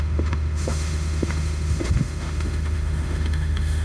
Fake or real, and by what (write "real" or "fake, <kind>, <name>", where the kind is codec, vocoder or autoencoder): fake, autoencoder, DAC-VAE